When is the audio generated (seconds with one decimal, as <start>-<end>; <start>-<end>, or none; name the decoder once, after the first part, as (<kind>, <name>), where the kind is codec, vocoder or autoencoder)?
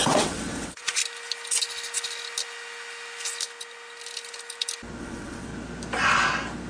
0.0-1.0 (vocoder, WaveNeXt); 5.0-5.5